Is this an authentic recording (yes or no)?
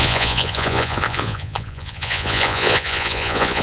no